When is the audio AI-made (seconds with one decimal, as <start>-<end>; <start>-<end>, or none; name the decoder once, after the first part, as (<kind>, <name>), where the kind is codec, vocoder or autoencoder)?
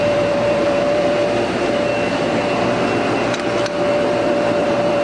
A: 0.0-1.2 (vocoder, BigVGAN v2); 3.9-5.0